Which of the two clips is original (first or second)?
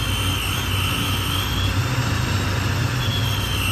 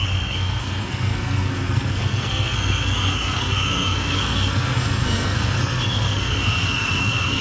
first